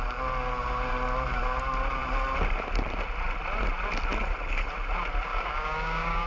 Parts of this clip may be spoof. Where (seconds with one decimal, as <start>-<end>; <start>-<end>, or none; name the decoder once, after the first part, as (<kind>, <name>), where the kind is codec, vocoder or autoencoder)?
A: 5.3-6.3 (codec, DAC)